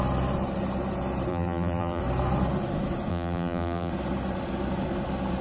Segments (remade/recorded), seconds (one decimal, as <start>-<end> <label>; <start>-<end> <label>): 0.0-1.3 recorded; 1.3-2.0 remade; 2.0-3.1 recorded; 3.1-3.9 remade; 3.9-5.4 recorded